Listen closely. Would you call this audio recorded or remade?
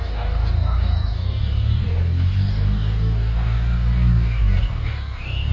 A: remade